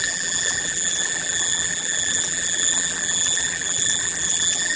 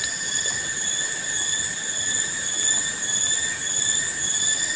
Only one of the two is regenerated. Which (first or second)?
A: first